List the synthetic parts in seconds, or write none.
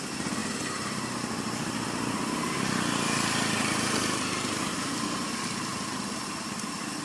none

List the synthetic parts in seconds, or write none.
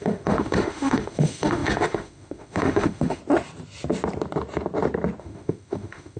0.0-3.2 (autoencoder, DAC-VAE); 5.2-6.2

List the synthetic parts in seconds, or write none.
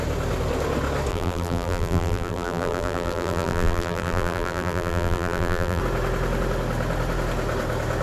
1.1-5.8 (vocoder, BigVGAN v2)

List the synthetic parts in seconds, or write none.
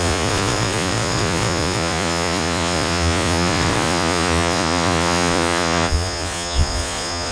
0.0-7.3 (vocoder, Vocos)